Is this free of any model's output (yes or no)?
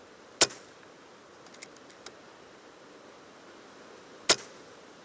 yes